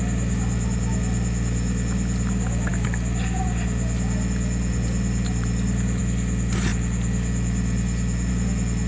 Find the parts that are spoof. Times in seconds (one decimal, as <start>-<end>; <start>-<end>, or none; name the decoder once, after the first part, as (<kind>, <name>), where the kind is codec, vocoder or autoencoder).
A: none